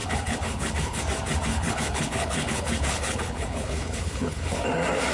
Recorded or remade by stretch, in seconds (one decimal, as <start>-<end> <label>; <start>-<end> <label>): 0.0-1.0 remade; 1.0-1.5 recorded; 1.5-4.6 remade; 4.6-5.1 recorded